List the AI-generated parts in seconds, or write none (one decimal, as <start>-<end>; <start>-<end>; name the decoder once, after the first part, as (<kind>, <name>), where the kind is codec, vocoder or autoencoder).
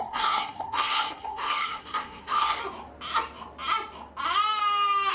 0.0-2.6 (codec, SNAC)